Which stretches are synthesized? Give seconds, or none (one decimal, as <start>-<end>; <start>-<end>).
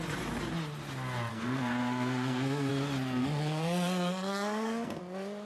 1.3-2.7; 3.2-5.0